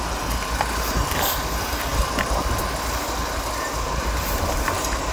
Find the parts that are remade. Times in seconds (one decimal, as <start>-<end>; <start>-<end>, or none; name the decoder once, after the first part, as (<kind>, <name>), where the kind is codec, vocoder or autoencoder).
none